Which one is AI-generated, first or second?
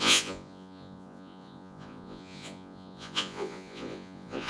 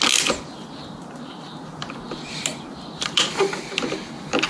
first